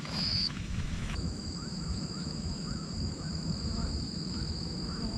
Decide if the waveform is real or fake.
fake